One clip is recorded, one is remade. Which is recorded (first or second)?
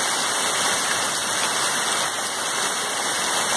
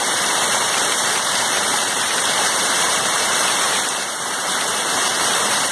first